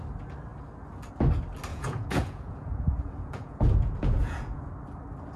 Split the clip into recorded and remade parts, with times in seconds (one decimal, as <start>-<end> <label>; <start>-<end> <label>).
0.0-1.7 recorded; 1.7-4.7 remade; 4.7-5.4 recorded